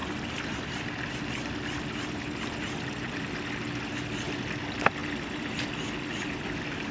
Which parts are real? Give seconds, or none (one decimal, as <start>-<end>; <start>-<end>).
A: 0.0-6.9